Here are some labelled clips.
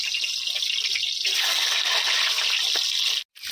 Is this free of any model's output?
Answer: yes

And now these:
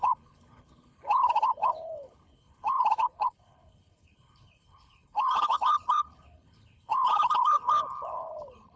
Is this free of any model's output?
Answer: no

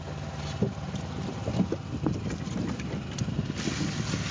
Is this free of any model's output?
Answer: yes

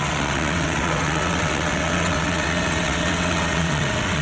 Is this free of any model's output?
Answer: no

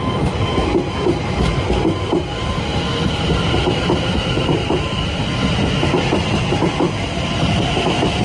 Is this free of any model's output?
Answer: yes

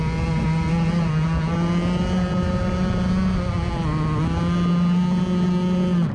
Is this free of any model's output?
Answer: yes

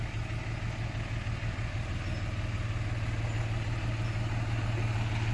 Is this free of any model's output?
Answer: yes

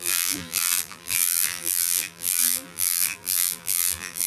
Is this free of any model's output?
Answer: no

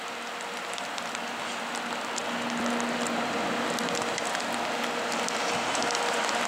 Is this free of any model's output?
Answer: yes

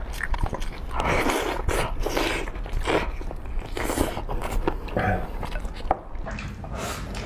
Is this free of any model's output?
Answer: yes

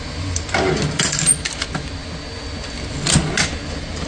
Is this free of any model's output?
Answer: yes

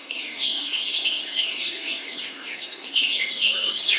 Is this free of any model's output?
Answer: no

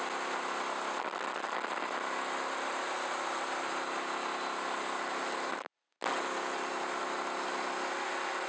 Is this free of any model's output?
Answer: yes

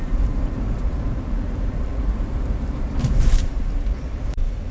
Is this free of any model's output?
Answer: no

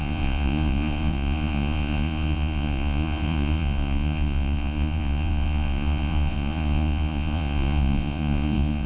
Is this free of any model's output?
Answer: no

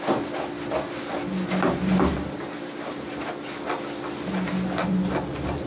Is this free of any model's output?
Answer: yes